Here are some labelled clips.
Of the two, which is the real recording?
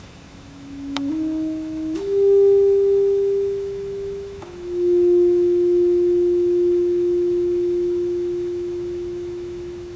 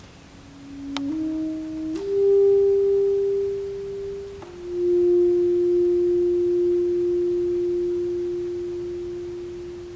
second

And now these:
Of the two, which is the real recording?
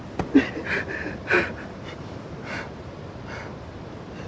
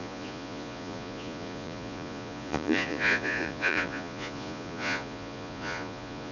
first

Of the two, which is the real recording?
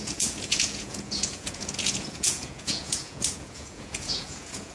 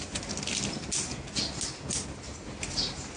second